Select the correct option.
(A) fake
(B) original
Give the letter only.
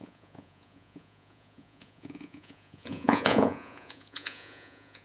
A